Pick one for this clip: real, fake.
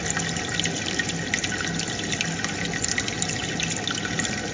real